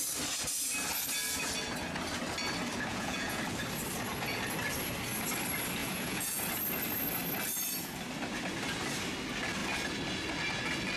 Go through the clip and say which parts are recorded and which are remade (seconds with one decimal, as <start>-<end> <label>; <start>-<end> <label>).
0.0-2.9 recorded; 2.9-3.4 remade; 3.4-5.8 recorded; 5.8-6.4 remade; 6.4-11.0 recorded